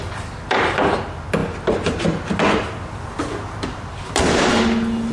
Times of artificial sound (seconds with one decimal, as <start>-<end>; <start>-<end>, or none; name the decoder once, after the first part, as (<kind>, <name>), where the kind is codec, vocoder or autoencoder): none